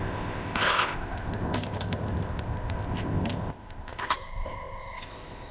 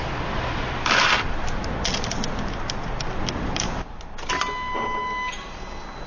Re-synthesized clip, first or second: first